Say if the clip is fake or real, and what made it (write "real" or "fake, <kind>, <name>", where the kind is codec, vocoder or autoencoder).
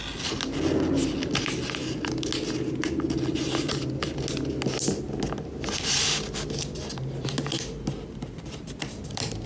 real